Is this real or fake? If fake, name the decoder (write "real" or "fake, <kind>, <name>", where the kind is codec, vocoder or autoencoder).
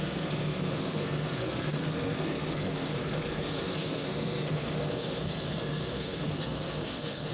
fake, codec, SNAC